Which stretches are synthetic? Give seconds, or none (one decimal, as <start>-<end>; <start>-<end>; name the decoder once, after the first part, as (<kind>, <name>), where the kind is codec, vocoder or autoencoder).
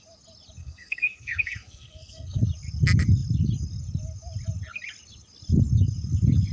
0.6-2.4 (codec, SNAC)